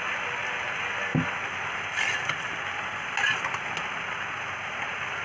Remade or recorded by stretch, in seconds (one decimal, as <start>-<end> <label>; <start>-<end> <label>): 0.0-5.2 recorded